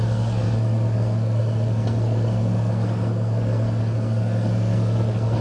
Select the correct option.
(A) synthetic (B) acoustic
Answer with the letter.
A